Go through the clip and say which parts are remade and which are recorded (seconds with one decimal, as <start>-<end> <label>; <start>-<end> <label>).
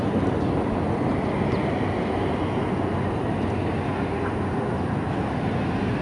0.0-6.0 recorded